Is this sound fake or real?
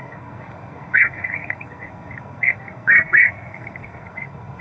fake